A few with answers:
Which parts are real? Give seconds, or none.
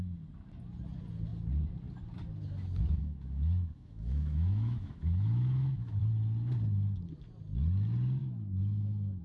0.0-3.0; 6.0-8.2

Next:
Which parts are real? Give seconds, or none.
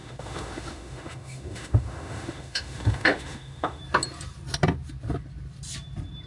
3.8-6.3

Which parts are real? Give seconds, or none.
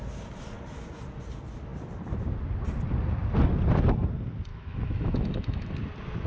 0.0-4.5; 5.7-6.3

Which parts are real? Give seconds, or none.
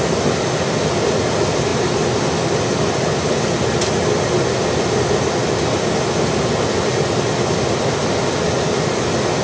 0.0-9.4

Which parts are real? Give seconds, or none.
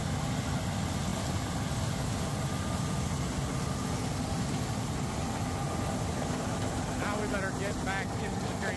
0.0-8.8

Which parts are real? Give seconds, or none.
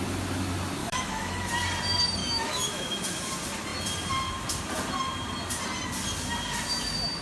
0.0-0.8; 1.5-2.2; 3.3-7.2